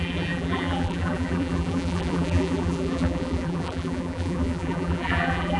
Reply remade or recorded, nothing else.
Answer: remade